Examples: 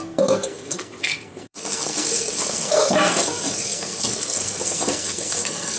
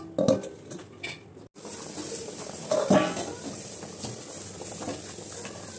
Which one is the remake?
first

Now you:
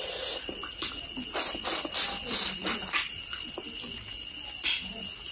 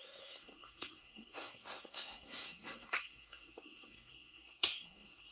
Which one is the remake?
second